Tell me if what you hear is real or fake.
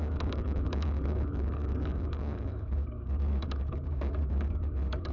fake